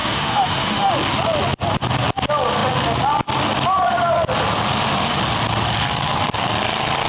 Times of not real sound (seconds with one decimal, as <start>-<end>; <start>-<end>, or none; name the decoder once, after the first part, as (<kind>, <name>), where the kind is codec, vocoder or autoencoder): 0.0-0.9 (autoencoder, DAC-VAE)